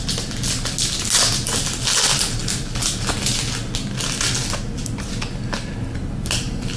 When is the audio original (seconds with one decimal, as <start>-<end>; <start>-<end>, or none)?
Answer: 0.0-6.8